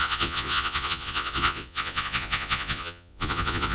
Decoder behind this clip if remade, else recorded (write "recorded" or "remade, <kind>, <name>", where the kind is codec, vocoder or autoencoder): remade, vocoder, Vocos